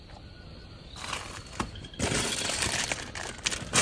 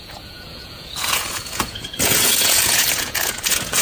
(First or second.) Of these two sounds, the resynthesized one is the second